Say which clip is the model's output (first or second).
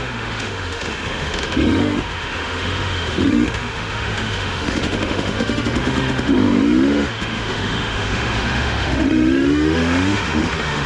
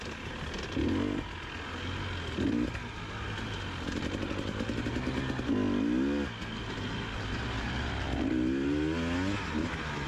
first